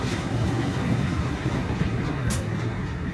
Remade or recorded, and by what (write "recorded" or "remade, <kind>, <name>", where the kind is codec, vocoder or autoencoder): remade, codec, SNAC